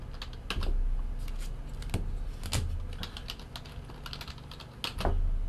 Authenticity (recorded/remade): recorded